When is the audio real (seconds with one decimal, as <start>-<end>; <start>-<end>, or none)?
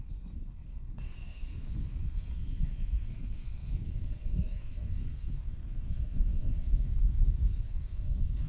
none